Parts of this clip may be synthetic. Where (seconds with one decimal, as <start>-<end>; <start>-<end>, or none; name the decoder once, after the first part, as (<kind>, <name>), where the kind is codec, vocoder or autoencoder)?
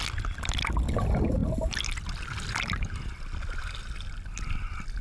none